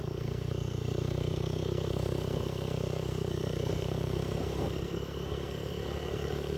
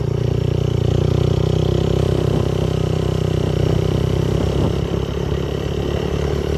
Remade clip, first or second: first